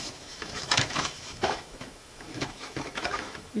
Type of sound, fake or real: fake